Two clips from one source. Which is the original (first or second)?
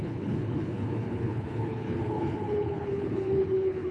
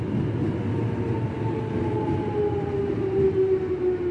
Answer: second